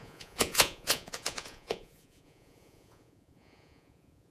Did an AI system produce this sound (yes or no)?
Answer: yes